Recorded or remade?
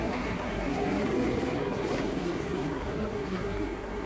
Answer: remade